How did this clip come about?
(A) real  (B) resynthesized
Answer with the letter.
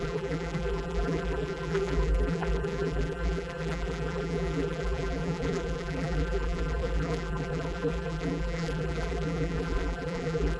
B